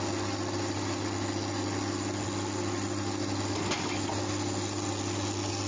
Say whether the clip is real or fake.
real